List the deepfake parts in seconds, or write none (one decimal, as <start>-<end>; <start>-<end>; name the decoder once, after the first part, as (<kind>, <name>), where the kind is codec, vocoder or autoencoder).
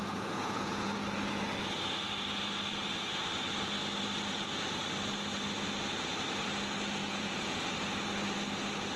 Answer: 0.0-0.9 (vocoder, Vocos); 7.0-7.6